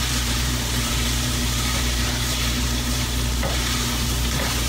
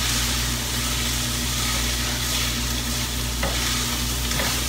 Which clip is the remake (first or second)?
first